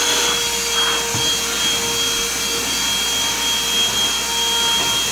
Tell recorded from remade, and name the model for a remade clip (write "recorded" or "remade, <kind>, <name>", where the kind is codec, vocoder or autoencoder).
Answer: recorded